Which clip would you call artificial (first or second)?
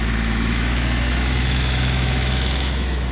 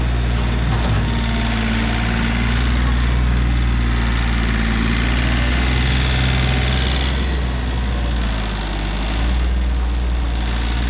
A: first